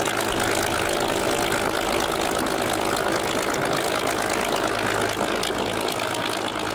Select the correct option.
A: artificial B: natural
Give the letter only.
B